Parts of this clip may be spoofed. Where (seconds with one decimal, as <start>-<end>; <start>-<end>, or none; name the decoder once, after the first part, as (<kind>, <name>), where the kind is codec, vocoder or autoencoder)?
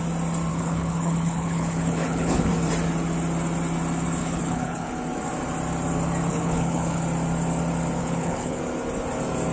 0.5-2.5 (codec, HILCodec); 4.2-4.9; 6.3-7.0; 8.0-8.6